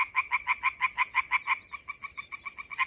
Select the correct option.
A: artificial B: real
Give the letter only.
B